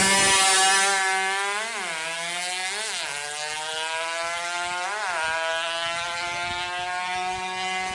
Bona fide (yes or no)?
yes